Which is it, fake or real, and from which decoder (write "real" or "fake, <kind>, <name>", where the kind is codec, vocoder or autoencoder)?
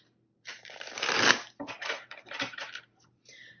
fake, vocoder, BigVGAN v2